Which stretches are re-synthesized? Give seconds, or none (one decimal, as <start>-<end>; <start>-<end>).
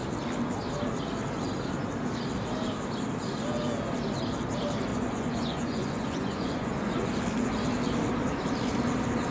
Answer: 4.9-7.1